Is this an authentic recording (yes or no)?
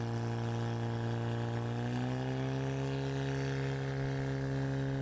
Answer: yes